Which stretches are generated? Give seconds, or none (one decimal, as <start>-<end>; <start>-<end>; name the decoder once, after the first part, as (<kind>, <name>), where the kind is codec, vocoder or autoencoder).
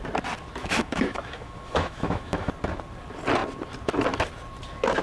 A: 0.6-2.5 (autoencoder, DAC-VAE)